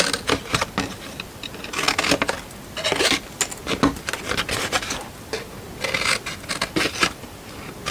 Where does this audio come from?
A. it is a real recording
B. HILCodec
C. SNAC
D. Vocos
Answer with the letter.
A